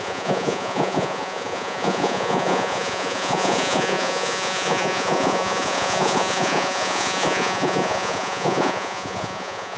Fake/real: fake